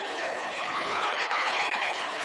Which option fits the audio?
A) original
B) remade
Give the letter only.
B